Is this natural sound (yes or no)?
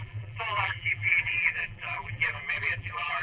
no